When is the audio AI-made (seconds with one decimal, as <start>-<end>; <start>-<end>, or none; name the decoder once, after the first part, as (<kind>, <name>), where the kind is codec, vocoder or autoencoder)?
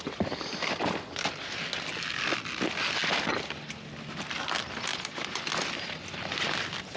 4.9-5.4 (vocoder, BigVGAN v2)